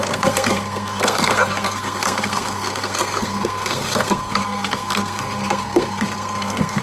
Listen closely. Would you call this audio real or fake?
fake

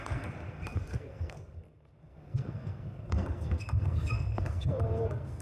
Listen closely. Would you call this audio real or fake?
fake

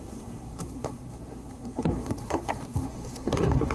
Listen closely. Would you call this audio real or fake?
fake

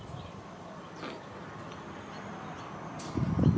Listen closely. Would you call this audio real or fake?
real